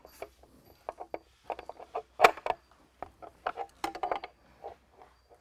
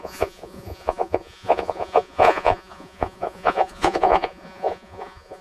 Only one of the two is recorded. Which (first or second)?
first